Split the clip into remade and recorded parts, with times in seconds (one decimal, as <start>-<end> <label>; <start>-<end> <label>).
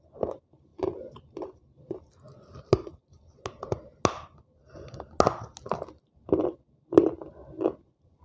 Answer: 0.0-8.2 recorded